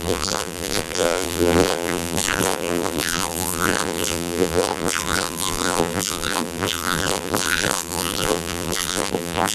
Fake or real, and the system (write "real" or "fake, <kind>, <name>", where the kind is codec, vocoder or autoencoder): fake, vocoder, BigVGAN v2